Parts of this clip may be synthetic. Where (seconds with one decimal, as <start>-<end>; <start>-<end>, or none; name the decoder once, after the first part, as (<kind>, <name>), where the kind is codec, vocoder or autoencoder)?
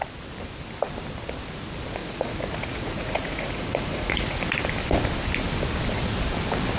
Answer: 2.0-4.4 (vocoder, Vocos)